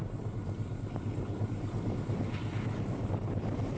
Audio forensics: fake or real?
real